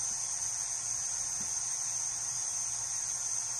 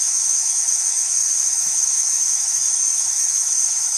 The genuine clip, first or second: first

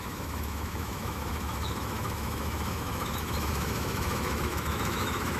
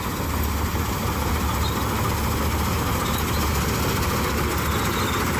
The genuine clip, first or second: second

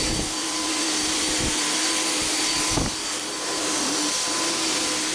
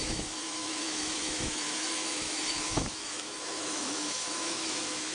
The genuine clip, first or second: first